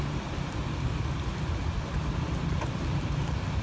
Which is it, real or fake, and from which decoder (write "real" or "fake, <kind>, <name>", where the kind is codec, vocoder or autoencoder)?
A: real